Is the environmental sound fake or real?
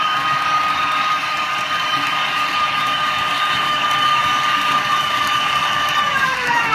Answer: fake